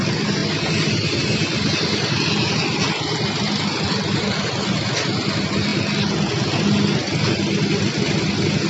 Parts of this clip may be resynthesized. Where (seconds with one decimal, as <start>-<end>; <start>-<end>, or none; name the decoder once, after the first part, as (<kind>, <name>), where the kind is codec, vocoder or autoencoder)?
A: none